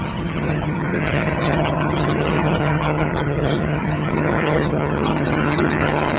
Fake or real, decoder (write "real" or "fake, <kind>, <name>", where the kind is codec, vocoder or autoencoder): fake, vocoder, HiFi-GAN